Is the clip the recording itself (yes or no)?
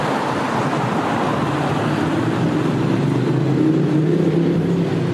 yes